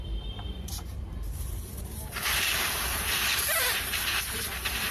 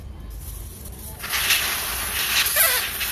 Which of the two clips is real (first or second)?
second